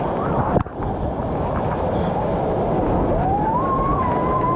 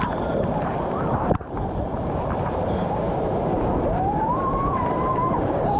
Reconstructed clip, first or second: second